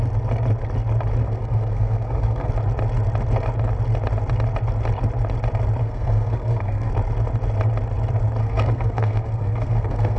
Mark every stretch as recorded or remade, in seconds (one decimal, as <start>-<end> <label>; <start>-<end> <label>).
0.0-1.2 recorded; 1.2-2.5 remade; 2.5-5.8 recorded; 5.8-6.9 remade; 6.9-8.4 recorded; 8.4-10.2 remade